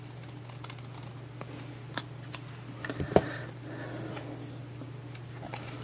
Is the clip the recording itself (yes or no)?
yes